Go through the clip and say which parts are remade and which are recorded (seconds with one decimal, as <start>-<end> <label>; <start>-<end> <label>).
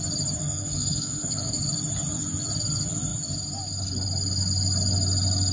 0.0-0.4 recorded; 0.4-1.6 remade; 1.6-5.5 recorded